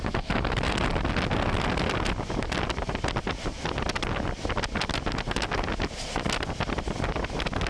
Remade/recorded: recorded